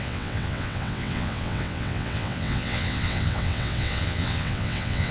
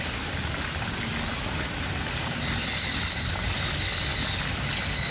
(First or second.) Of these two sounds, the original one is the second